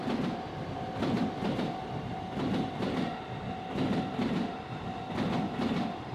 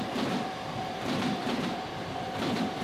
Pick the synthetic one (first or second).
second